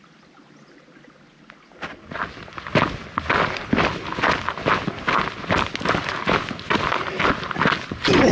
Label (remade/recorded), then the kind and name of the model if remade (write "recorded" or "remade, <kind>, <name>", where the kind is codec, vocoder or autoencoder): recorded